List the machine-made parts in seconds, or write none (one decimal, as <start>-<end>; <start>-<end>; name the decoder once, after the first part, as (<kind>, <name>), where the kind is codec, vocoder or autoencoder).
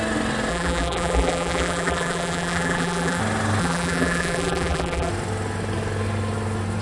0.5-3.2 (vocoder, BigVGAN v2); 3.6-5.1